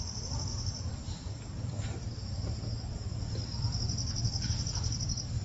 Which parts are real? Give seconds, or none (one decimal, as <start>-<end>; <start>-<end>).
0.0-0.5; 2.5-5.4